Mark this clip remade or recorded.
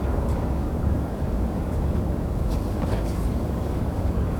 remade